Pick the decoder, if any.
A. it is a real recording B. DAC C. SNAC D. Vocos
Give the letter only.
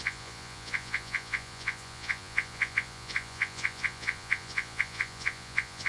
D